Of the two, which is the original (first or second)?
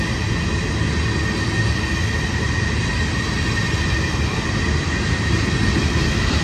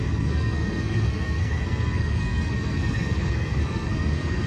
first